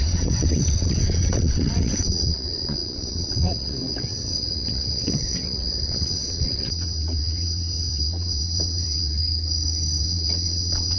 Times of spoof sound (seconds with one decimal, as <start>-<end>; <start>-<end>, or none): 0.0-9.2; 10.0-11.0